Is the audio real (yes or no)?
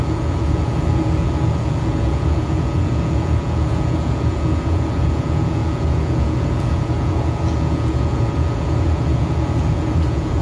no